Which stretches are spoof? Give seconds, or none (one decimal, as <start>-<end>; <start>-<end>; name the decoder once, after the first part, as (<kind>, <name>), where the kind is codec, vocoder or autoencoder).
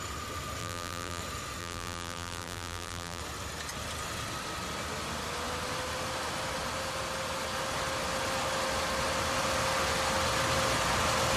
0.6-1.2 (vocoder, BigVGAN v2); 1.6-3.2